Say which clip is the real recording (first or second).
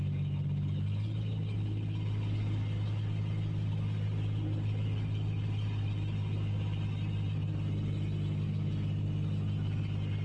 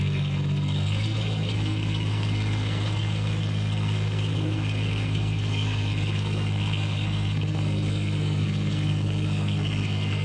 first